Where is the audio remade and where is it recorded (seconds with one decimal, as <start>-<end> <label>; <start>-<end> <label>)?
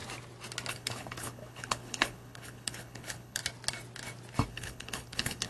0.0-0.7 recorded; 0.7-3.4 remade; 3.4-4.5 recorded; 4.5-5.5 remade